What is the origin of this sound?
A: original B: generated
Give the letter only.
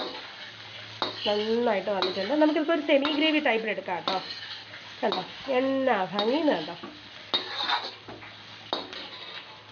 A